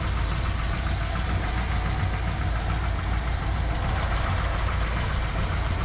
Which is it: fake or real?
real